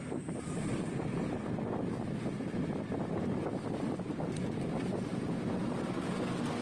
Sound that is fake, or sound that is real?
real